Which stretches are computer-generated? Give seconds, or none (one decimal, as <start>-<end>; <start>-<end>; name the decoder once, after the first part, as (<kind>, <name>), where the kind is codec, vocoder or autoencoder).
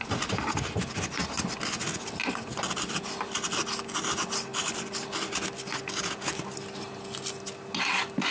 none